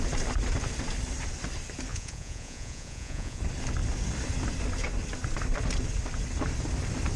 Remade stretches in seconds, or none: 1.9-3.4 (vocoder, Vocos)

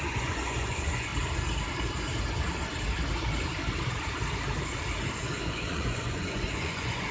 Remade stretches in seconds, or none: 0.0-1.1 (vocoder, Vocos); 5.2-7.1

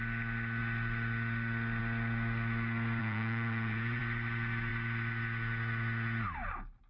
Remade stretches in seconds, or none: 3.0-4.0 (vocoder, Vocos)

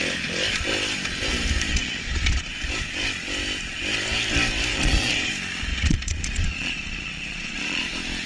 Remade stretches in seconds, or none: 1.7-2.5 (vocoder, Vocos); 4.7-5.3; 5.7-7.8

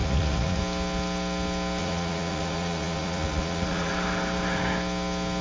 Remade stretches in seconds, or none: 0.0-0.6 (vocoder, Vocos); 1.8-3.9